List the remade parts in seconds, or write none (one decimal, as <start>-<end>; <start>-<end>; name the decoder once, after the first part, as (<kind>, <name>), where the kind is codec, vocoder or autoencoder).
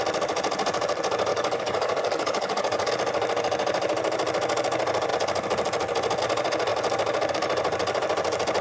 1.3-2.9 (codec, DAC)